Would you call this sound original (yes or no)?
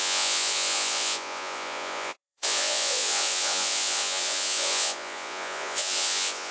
no